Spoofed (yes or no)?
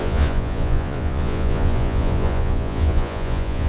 yes